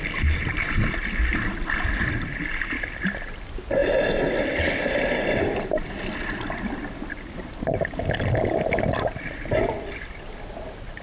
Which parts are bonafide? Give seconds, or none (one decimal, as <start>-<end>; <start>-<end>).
0.0-11.0